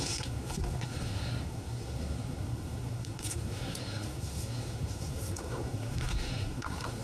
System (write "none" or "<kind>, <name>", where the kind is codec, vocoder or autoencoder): codec, SNAC